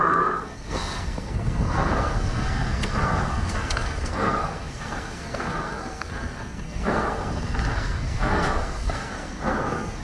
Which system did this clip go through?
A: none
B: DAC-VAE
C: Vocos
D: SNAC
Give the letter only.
D